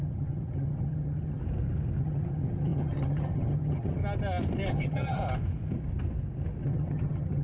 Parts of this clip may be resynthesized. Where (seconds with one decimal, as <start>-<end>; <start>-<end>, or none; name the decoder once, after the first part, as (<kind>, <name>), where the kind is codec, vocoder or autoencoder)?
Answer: 0.0-1.4 (vocoder, HiFi-GAN); 2.0-4.0; 4.7-5.2; 6.6-7.4